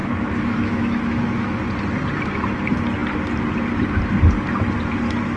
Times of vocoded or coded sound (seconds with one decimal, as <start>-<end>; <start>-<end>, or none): 0.0-1.6